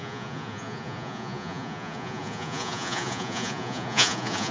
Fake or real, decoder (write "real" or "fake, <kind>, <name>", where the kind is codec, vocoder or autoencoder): fake, vocoder, Vocos